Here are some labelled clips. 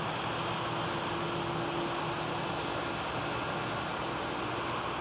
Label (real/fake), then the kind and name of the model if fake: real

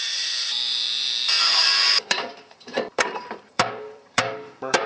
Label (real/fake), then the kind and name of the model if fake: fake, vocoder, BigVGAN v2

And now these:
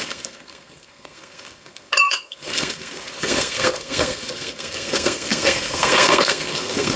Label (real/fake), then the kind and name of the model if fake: fake, codec, SNAC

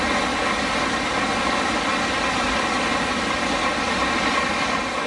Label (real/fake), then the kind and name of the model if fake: real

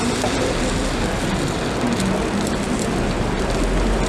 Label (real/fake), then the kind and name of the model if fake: real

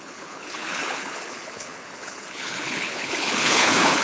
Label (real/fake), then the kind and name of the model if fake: fake, codec, HILCodec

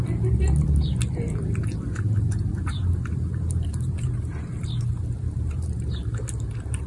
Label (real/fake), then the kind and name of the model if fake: fake, vocoder, BigVGAN v2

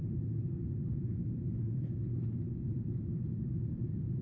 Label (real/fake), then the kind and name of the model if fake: fake, vocoder, BigVGAN v2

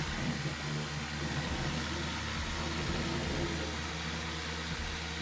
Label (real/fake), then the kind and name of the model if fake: real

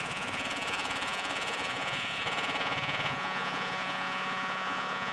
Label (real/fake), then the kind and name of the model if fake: fake, vocoder, Vocos